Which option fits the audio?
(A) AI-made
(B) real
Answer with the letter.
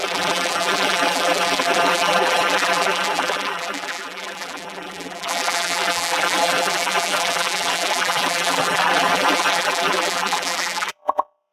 A